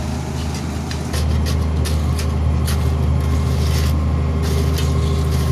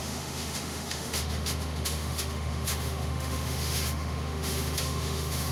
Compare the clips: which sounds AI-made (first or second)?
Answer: second